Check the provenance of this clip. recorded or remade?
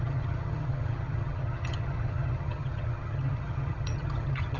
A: remade